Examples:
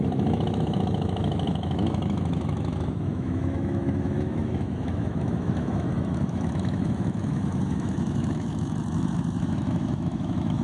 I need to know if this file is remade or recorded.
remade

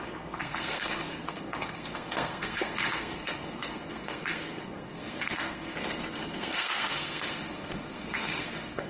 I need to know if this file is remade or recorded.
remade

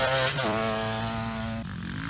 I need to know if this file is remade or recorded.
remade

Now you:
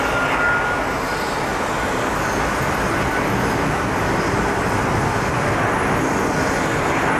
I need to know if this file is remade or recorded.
recorded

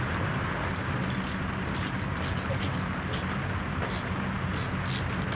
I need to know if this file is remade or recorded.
recorded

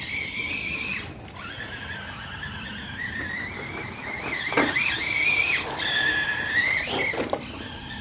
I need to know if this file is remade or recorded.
recorded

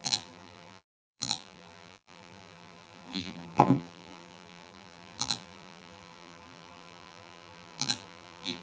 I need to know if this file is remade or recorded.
remade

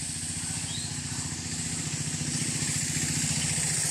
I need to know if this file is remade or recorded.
recorded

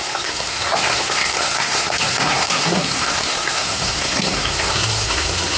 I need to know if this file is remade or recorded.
remade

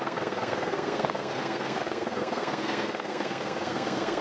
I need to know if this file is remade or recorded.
remade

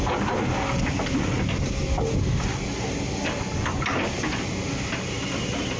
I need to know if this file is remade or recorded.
recorded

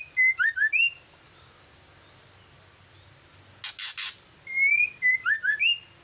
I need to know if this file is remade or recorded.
recorded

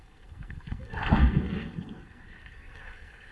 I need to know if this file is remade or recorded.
remade